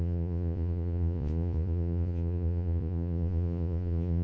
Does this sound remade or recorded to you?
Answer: remade